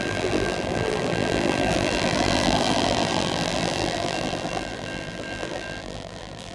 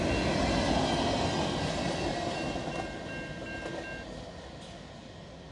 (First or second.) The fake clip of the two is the first